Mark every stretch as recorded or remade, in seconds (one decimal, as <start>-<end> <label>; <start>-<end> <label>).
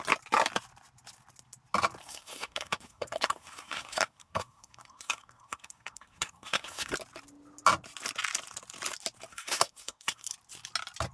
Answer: 0.0-2.0 recorded; 2.0-6.9 remade; 6.9-9.3 recorded; 9.3-10.3 remade; 10.3-11.1 recorded